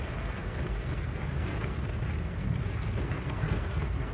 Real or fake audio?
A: fake